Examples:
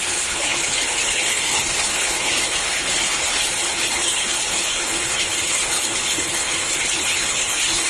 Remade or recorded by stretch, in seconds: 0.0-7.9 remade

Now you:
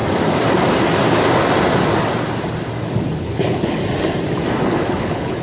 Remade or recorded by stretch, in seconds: 0.0-3.2 recorded; 3.2-3.8 remade; 3.8-4.7 recorded; 4.7-5.4 remade